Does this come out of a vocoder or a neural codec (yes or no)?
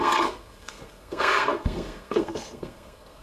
yes